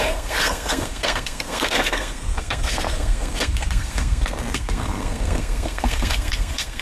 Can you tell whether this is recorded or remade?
remade